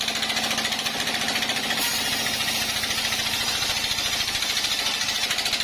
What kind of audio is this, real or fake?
real